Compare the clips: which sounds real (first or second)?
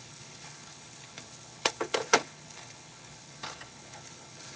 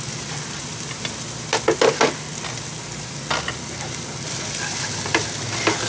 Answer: second